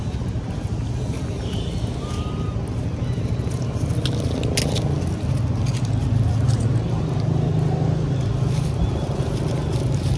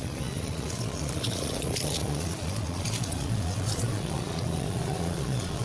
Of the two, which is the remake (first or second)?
second